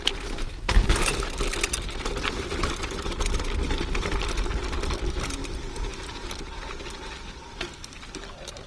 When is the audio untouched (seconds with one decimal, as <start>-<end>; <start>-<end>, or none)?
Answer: 0.0-8.7